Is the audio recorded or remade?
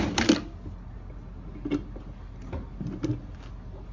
recorded